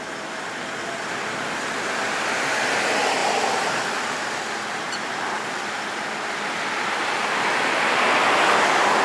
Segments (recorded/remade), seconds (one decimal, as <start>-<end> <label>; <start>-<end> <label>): 0.0-9.0 recorded